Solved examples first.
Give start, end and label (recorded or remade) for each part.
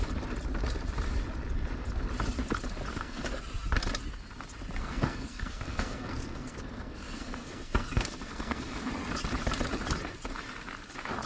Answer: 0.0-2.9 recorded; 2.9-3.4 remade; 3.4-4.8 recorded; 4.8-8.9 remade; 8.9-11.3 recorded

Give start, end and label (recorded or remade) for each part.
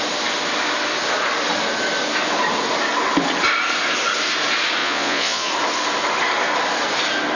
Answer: 0.0-4.8 recorded; 4.8-5.5 remade; 5.5-7.3 recorded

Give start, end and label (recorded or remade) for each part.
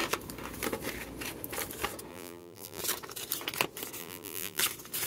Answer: 0.0-2.1 recorded; 2.1-2.8 remade; 2.8-4.0 recorded; 4.0-4.6 remade; 4.6-5.1 recorded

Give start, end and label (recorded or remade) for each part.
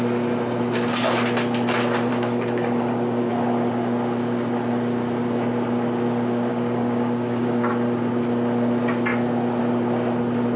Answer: 0.0-2.1 recorded; 2.1-3.3 remade; 3.3-6.5 recorded; 6.5-7.7 remade; 7.7-10.6 recorded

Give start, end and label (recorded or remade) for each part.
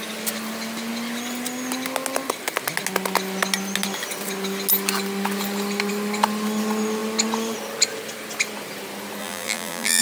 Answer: 0.0-9.2 recorded; 9.2-10.0 remade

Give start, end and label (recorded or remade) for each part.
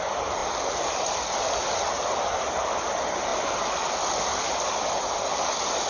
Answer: 0.0-5.9 recorded